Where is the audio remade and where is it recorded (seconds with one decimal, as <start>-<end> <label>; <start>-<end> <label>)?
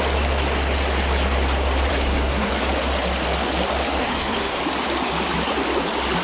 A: 0.0-1.9 recorded; 1.9-2.5 remade; 2.5-4.0 recorded; 4.0-4.6 remade; 4.6-6.2 recorded